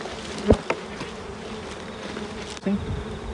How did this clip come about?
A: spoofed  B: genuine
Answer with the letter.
B